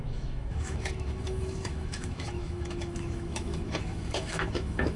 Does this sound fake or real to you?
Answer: fake